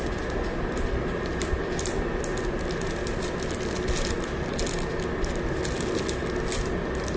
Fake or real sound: real